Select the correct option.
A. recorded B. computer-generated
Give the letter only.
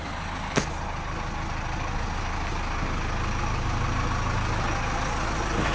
A